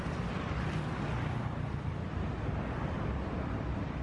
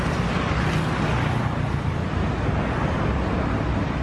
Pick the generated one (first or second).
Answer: first